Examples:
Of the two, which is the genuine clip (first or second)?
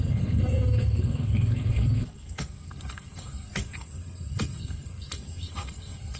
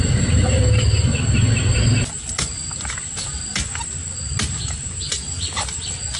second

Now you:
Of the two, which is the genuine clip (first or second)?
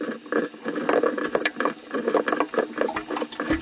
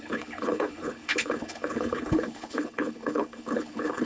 first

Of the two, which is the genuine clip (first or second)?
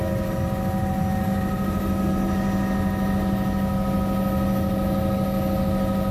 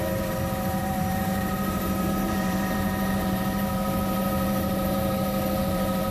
first